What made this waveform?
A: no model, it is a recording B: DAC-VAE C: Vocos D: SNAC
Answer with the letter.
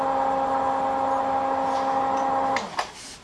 A